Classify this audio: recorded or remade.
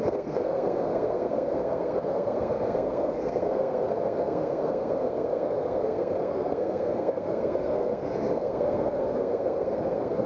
remade